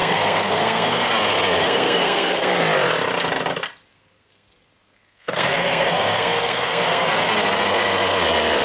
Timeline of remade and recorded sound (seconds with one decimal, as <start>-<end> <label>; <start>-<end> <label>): 0.0-1.1 remade; 1.1-1.6 recorded; 1.6-2.5 remade; 2.5-3.9 recorded; 3.9-7.1 remade; 7.1-8.6 recorded